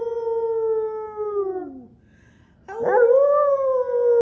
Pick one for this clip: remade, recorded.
recorded